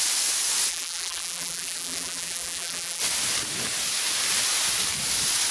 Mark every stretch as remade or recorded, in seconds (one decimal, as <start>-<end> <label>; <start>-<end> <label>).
0.0-0.7 recorded; 0.7-3.0 remade; 3.0-5.5 recorded